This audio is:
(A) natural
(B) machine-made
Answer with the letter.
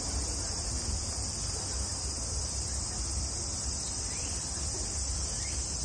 B